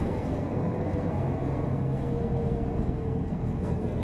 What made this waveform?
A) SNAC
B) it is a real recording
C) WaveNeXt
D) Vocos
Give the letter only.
A